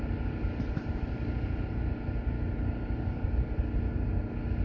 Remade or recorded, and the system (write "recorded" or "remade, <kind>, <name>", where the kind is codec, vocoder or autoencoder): recorded